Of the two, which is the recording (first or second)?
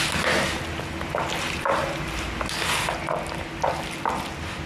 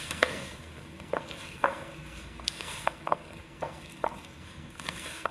first